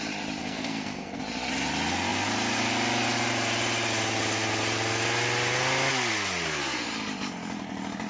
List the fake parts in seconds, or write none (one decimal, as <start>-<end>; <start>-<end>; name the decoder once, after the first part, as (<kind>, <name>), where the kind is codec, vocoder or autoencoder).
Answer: 0.4-1.2 (codec, SNAC)